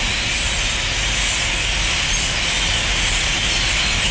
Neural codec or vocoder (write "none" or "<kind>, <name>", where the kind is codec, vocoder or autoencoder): none